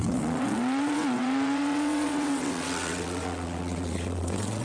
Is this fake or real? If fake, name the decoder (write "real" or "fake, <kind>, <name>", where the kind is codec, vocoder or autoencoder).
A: fake, vocoder, WaveNeXt